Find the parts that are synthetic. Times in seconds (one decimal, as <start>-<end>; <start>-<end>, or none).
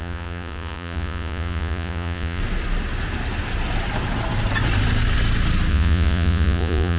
0.0-2.4; 5.7-7.0